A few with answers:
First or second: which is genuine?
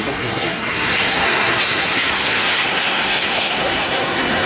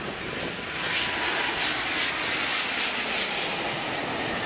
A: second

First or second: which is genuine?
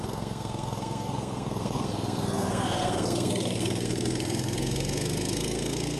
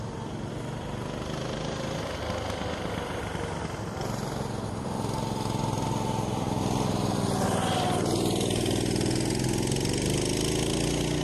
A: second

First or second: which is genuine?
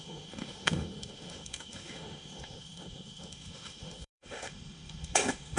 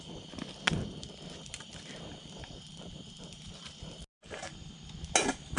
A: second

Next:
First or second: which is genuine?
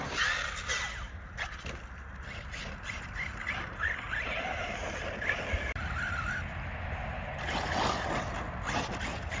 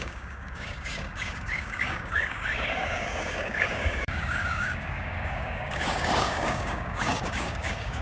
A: first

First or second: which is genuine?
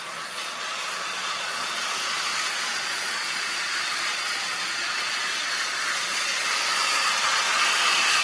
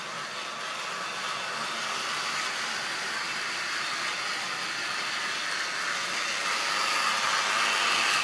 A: second